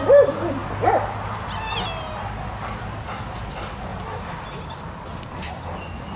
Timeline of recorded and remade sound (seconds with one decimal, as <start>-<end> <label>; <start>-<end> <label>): 0.0-3.9 recorded; 3.9-4.6 remade; 4.6-5.1 recorded; 5.1-5.7 remade; 5.7-6.2 recorded